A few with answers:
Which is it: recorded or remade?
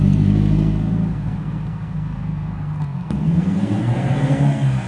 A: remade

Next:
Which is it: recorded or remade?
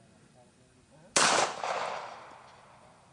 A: recorded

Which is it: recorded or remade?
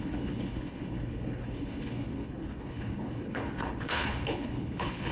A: remade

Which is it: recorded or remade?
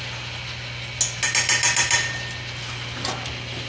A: recorded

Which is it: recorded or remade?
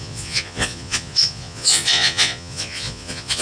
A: remade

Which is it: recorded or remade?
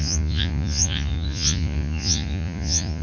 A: remade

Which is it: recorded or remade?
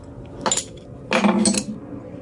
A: recorded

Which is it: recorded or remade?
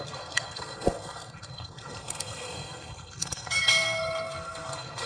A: remade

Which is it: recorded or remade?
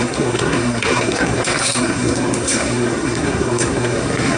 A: remade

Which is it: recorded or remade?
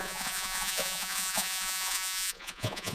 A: remade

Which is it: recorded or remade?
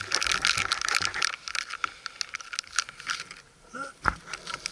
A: recorded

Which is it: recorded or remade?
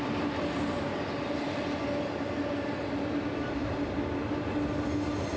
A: recorded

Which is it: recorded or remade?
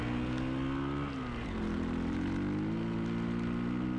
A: recorded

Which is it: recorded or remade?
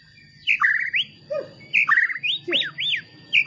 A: recorded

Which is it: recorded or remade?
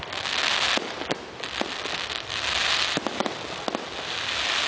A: recorded